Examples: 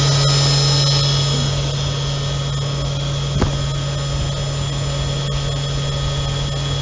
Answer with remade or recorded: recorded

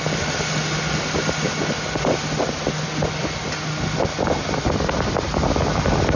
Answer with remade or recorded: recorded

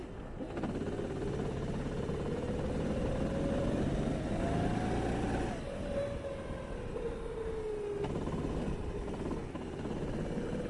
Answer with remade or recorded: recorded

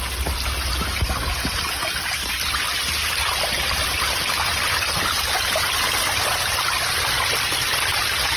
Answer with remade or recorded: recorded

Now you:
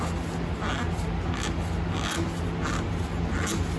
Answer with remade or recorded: recorded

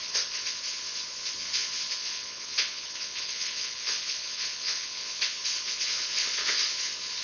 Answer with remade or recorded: remade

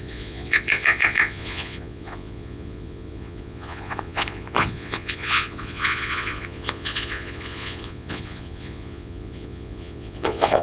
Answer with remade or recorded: remade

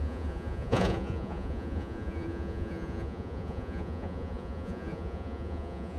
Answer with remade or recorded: remade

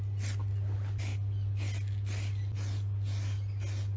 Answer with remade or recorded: recorded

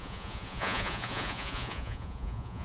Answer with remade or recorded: remade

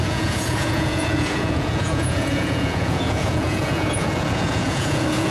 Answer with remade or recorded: remade